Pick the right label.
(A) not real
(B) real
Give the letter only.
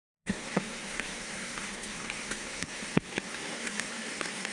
A